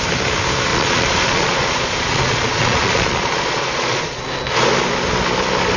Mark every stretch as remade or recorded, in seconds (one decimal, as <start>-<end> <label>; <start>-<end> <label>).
0.0-0.7 recorded; 0.7-4.2 remade; 4.2-5.8 recorded